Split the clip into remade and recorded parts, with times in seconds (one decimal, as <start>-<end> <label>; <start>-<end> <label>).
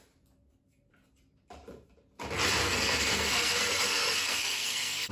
0.0-2.6 recorded; 2.6-5.1 remade